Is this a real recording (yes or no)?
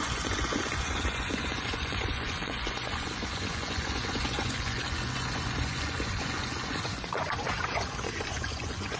no